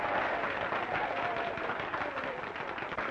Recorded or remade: recorded